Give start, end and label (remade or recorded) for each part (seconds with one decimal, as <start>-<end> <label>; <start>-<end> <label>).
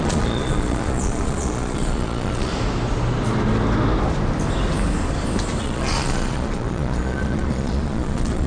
0.0-2.5 remade; 2.5-5.6 recorded; 5.6-8.5 remade